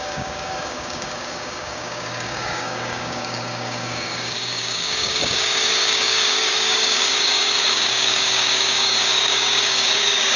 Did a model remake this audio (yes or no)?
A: yes